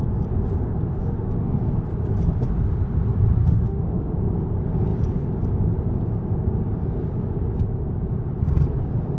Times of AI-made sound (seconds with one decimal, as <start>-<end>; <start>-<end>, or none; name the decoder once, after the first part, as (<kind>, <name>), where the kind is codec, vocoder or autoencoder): 1.0-1.6 (autoencoder, DAC-VAE); 3.4-4.1